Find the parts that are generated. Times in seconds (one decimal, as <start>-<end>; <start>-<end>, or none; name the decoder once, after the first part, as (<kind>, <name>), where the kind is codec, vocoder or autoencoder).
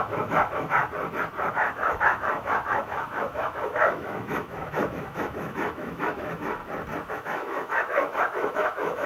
0.0-0.8 (autoencoder, DAC-VAE); 1.5-6.6; 7.1-9.1